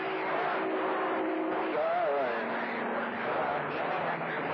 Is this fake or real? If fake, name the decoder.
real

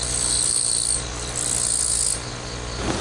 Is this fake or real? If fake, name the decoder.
real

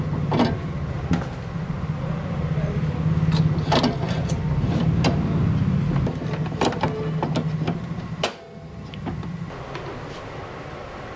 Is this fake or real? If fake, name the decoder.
real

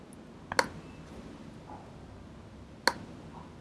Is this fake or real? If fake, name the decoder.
real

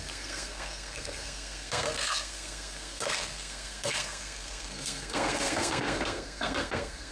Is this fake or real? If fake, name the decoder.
fake, codec, SNAC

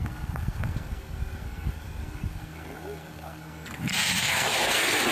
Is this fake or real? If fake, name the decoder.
fake, codec, SNAC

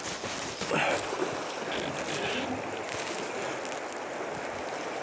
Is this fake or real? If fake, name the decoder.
real